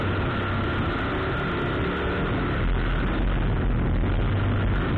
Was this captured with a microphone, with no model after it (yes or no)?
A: yes